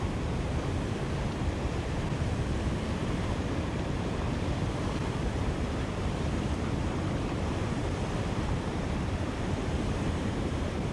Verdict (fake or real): fake